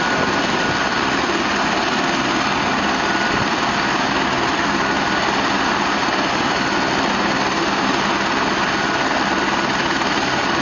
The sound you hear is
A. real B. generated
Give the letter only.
A